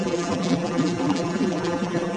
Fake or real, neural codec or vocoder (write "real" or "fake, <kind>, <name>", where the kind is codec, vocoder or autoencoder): fake, vocoder, BigVGAN v2